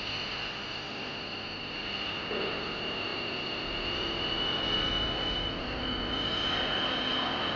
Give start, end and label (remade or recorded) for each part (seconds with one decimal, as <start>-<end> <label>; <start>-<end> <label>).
0.0-7.6 recorded